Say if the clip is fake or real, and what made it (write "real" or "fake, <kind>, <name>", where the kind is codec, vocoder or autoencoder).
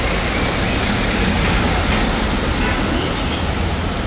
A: real